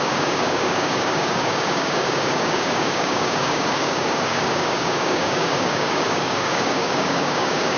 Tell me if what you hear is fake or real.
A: fake